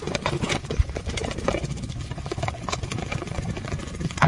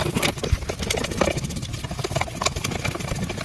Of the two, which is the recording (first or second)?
second